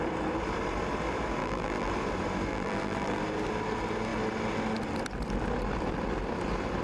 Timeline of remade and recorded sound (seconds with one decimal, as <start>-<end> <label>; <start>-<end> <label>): 0.0-1.4 recorded; 1.4-1.9 remade; 1.9-2.5 recorded; 2.5-3.2 remade; 3.2-6.8 recorded